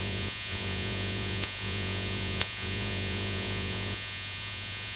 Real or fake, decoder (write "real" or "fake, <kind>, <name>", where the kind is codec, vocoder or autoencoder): fake, vocoder, Vocos